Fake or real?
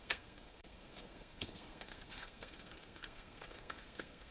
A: fake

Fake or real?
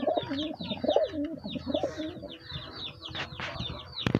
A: real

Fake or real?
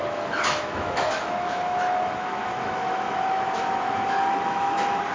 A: fake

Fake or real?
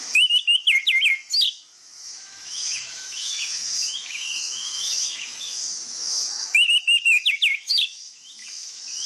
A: fake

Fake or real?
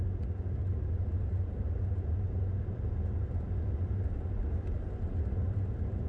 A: real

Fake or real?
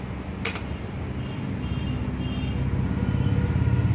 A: real